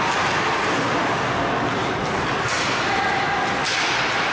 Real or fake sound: real